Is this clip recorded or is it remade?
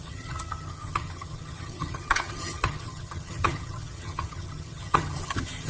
remade